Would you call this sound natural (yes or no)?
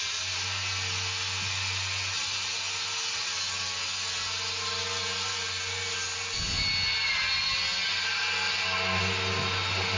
yes